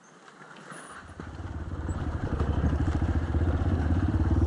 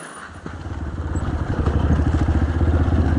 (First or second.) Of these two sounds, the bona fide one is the second